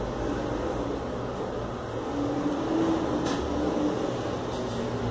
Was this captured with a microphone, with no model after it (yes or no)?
yes